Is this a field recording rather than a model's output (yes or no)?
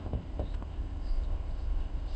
no